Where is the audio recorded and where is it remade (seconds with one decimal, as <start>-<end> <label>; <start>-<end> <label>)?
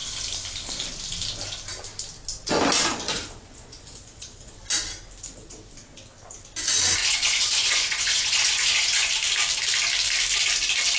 0.0-3.0 recorded; 3.0-4.6 remade; 4.6-7.0 recorded; 7.0-9.1 remade; 9.1-11.0 recorded